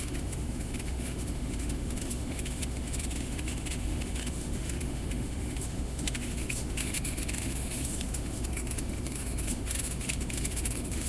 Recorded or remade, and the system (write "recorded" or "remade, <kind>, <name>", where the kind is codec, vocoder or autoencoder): remade, autoencoder, DAC-VAE